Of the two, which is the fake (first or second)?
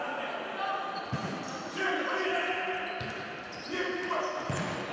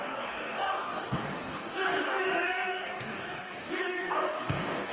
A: second